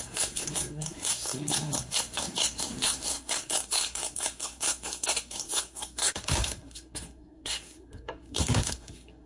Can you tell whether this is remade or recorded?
remade